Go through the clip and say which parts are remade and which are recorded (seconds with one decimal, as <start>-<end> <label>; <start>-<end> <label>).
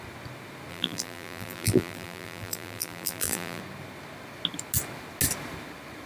0.0-0.7 recorded; 0.7-3.6 remade; 3.6-6.1 recorded